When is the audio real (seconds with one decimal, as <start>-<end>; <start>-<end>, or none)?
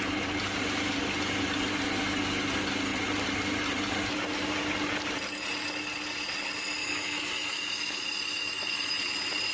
0.0-6.8; 9.0-9.5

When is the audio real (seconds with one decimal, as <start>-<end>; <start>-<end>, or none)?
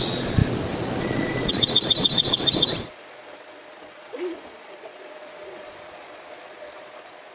0.4-1.0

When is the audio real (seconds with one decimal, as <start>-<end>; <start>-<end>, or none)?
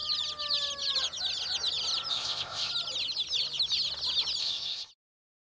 0.0-2.1; 2.7-4.4; 4.9-5.6